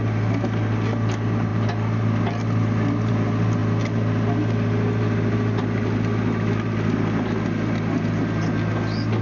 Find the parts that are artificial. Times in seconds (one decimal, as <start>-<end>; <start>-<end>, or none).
none